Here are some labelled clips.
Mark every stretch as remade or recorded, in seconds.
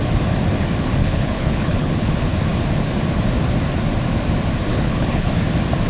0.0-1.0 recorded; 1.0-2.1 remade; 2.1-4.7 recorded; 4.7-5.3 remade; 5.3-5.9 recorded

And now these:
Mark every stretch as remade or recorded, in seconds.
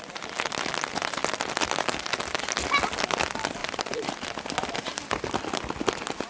0.0-6.3 recorded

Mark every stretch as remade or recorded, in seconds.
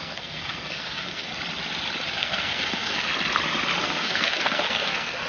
0.0-1.3 remade; 1.3-2.1 recorded; 2.1-3.1 remade; 3.1-3.8 recorded; 3.8-5.3 remade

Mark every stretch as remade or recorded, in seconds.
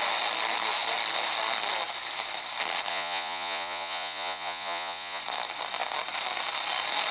0.0-2.9 recorded; 2.9-5.2 remade; 5.2-7.1 recorded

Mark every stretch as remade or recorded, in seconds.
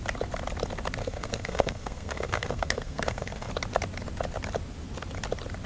0.0-1.0 recorded; 1.0-3.5 remade; 3.5-5.7 recorded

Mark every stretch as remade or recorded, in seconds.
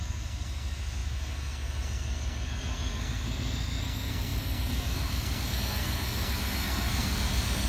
0.0-7.7 remade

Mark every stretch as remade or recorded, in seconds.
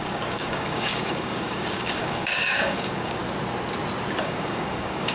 0.0-3.2 remade; 3.2-4.2 recorded; 4.2-5.1 remade